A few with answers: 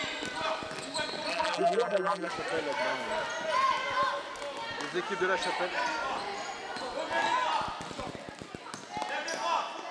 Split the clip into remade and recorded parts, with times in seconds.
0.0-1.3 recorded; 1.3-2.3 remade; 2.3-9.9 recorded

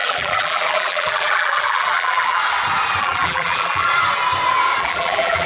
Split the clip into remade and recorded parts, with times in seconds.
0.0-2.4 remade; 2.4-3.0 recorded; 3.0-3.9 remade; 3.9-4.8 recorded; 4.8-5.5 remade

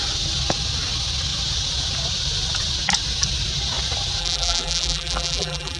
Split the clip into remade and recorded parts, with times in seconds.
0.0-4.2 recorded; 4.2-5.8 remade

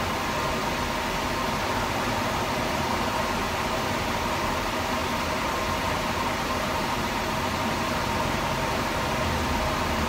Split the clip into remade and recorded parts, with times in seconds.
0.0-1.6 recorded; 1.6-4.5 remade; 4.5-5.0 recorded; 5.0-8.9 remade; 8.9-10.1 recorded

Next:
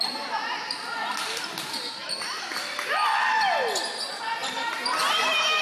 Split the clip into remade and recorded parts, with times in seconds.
0.0-5.6 recorded

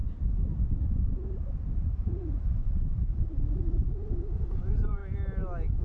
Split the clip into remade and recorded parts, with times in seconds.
0.0-2.4 recorded; 2.4-3.8 remade; 3.8-4.4 recorded; 4.4-5.0 remade; 5.0-5.8 recorded